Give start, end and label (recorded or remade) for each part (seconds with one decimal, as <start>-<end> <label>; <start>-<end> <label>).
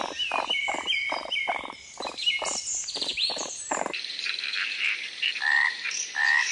0.0-0.7 recorded; 0.7-6.5 remade